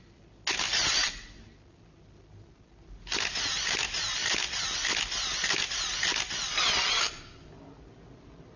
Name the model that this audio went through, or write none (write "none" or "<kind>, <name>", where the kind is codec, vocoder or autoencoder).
none